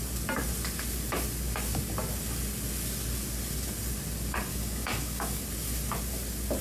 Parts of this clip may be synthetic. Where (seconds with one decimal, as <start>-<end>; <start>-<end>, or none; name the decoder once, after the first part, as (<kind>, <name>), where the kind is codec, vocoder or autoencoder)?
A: 4.5-5.4 (codec, DAC)